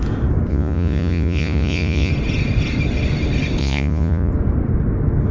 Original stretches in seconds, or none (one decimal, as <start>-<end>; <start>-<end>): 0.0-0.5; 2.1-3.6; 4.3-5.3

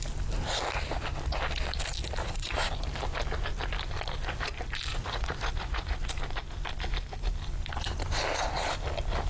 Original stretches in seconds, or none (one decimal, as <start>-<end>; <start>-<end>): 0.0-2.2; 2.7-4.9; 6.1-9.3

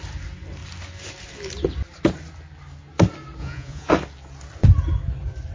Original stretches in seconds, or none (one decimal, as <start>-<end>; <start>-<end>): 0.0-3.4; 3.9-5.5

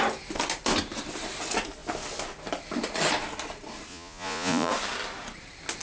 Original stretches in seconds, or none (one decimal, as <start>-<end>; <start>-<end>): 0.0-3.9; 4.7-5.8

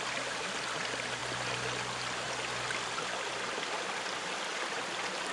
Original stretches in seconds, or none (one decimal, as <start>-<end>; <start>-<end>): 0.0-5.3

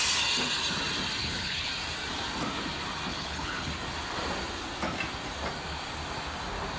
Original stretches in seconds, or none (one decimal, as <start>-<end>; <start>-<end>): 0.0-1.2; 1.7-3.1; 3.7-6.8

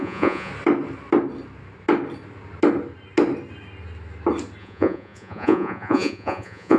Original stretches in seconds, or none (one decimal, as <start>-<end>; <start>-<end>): 0.5-4.6

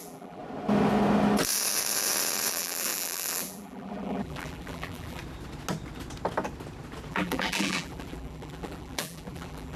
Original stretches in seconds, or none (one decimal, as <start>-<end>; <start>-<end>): 0.4-2.5; 5.2-7.1